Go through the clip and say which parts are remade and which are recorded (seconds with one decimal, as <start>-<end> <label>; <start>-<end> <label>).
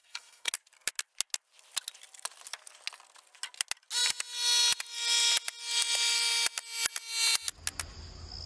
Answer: 0.0-0.5 remade; 0.5-8.5 recorded